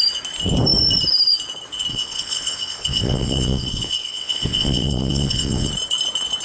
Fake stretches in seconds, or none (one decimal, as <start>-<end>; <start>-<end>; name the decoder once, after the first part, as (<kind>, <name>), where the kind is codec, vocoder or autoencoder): 1.9-5.7 (vocoder, WaveNeXt)